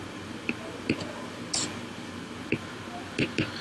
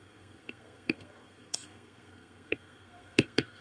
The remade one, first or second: second